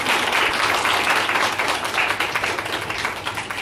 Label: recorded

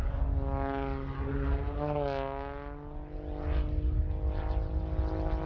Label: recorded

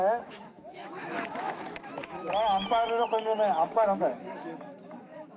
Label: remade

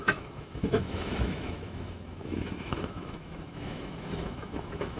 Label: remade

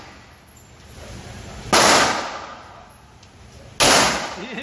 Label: recorded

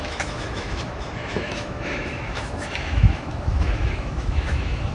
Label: remade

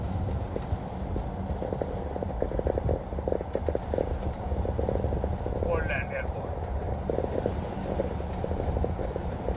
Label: recorded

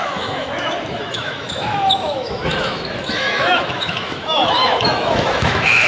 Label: remade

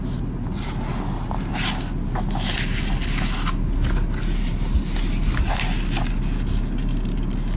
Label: recorded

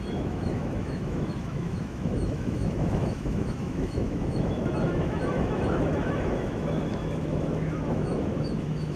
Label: remade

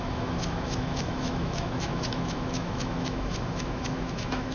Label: remade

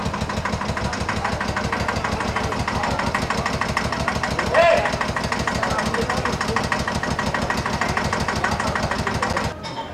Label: recorded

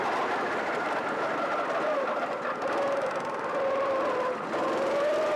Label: recorded